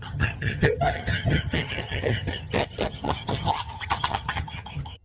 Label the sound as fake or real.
fake